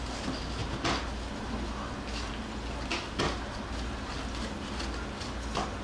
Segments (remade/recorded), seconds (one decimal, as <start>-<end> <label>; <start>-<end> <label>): 0.0-5.8 recorded